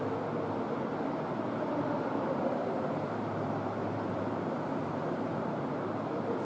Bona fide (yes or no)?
no